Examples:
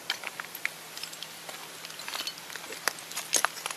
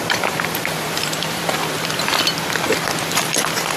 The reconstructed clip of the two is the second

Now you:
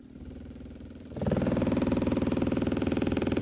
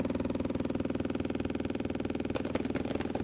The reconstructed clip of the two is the first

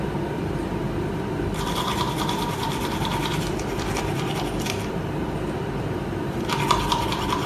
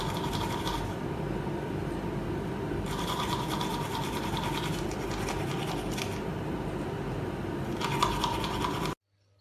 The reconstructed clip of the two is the first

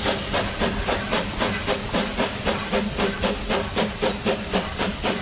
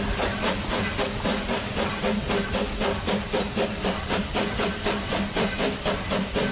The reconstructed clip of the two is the first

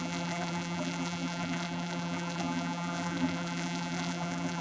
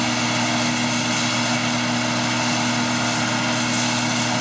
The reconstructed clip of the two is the first